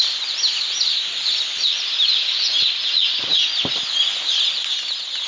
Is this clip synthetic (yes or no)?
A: no